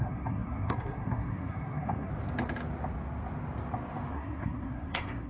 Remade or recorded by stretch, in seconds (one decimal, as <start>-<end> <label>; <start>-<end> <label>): 0.0-2.1 remade; 2.1-4.1 recorded; 4.1-5.3 remade